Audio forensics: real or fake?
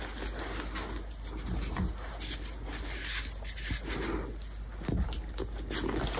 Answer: real